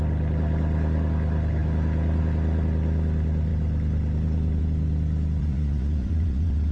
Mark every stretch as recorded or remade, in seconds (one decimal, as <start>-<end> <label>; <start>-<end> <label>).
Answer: 0.0-5.4 recorded; 5.4-6.7 remade